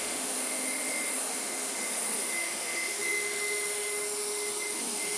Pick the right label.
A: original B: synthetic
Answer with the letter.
B